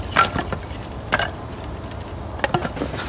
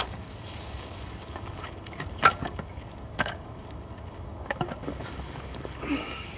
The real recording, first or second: first